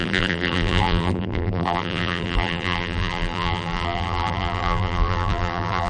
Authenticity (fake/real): fake